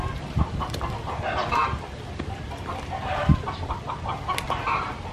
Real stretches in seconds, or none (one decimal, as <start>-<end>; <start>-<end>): 0.0-5.1